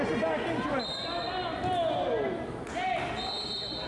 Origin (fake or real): real